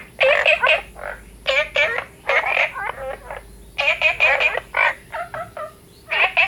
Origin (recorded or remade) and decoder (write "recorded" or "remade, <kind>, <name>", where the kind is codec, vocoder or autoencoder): recorded